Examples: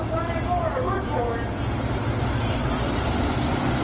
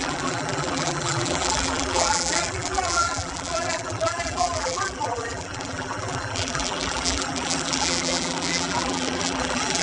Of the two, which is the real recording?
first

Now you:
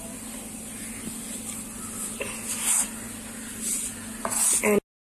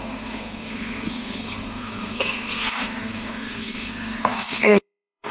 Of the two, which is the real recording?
first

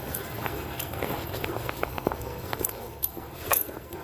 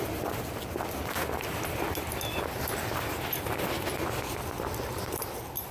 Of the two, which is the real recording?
second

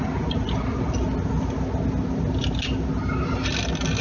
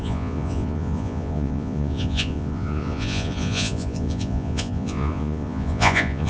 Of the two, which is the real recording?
first